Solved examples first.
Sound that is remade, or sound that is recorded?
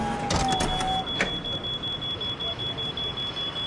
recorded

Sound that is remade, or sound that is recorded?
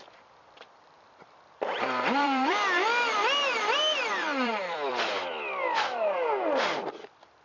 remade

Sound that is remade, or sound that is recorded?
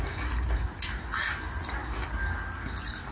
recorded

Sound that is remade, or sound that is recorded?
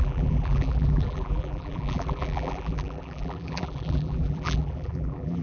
remade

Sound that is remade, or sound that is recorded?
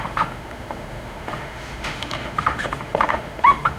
remade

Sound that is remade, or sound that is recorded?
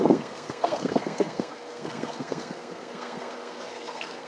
remade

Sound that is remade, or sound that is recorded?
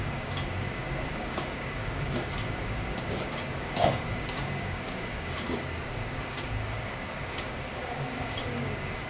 remade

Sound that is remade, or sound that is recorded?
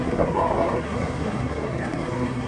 remade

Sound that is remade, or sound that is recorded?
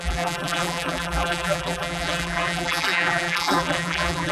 remade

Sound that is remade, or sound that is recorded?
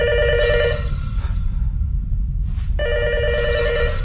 recorded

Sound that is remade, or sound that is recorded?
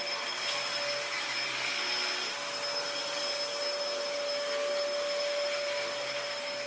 recorded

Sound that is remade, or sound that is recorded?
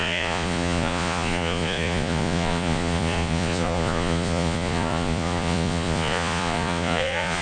remade